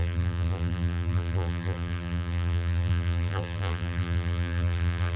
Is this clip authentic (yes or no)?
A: no